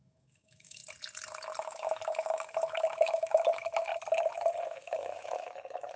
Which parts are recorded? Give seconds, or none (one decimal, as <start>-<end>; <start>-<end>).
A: 0.8-1.6; 3.9-4.6